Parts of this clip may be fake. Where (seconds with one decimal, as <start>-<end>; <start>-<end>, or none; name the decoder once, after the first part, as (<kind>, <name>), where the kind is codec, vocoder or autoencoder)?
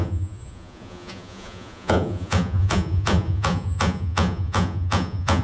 0.0-5.4 (vocoder, Vocos)